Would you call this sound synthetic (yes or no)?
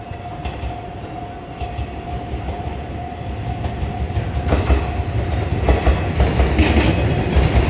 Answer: no